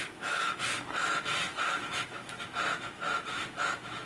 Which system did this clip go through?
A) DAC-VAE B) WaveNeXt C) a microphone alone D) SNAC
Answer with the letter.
A